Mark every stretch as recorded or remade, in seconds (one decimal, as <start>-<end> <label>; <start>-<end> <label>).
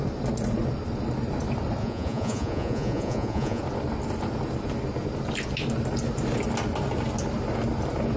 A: 0.0-1.8 recorded; 1.8-3.6 remade; 3.6-8.2 recorded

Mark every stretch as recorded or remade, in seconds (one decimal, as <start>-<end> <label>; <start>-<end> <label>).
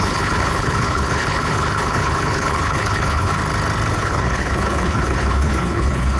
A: 0.0-3.4 remade; 3.4-3.9 recorded; 3.9-6.2 remade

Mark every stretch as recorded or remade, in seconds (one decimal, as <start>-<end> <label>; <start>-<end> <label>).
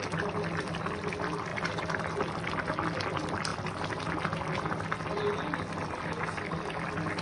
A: 0.0-7.2 recorded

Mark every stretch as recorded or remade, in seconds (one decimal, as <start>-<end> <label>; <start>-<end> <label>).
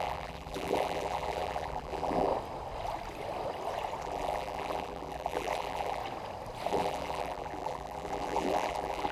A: 0.0-2.3 remade; 2.3-4.0 recorded; 4.0-6.0 remade; 6.0-6.7 recorded; 6.7-9.1 remade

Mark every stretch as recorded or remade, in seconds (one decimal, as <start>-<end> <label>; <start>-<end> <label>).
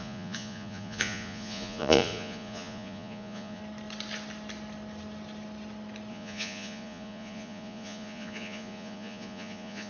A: 0.0-3.6 remade; 3.6-6.1 recorded; 6.1-9.9 remade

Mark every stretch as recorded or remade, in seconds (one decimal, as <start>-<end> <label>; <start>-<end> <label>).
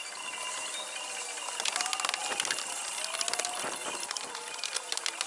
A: 0.0-2.2 recorded; 2.2-3.4 remade; 3.4-5.3 recorded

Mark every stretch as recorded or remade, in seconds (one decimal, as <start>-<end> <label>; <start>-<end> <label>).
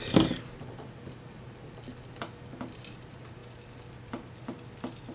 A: 0.0-5.1 recorded